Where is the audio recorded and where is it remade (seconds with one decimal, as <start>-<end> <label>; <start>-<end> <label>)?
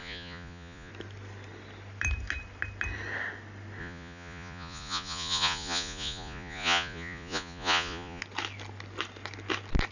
0.0-0.9 remade; 0.9-3.8 recorded; 3.8-8.2 remade; 8.2-9.9 recorded